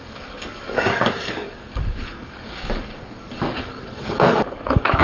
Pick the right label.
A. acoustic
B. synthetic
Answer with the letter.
B